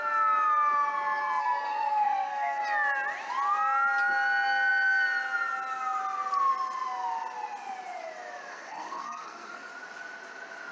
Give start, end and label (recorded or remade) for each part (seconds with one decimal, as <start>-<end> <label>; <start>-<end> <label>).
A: 0.0-1.4 recorded; 1.4-2.6 remade; 2.6-8.5 recorded; 8.5-9.7 remade; 9.7-10.7 recorded